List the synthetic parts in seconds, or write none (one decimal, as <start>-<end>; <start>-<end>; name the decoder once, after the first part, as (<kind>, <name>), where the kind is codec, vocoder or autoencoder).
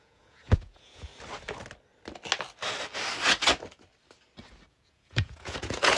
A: 0.0-1.1 (vocoder, Vocos); 4.7-6.0